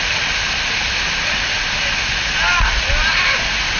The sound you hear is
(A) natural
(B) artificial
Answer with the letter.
A